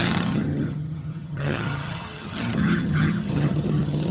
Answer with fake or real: fake